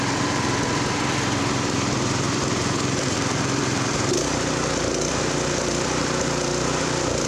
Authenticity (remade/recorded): remade